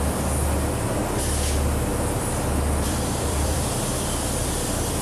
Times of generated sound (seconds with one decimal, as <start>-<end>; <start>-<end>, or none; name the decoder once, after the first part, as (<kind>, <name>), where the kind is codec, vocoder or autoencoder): 1.9-5.0 (vocoder, BigVGAN v2)